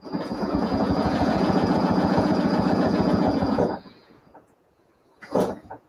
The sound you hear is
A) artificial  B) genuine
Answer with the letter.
A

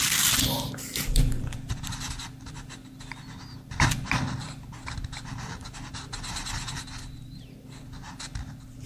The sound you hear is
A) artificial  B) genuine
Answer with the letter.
B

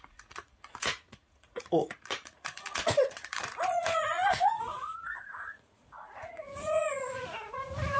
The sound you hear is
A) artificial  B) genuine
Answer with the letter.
A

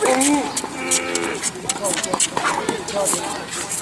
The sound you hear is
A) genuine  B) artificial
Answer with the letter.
A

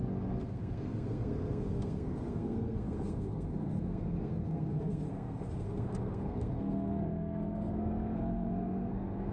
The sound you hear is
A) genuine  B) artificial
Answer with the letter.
B